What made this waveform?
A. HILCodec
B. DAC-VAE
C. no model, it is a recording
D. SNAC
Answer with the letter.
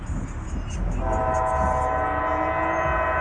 C